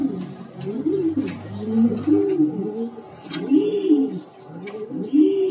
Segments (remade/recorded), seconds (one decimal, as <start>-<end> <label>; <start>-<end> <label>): 0.0-2.1 remade; 2.1-5.5 recorded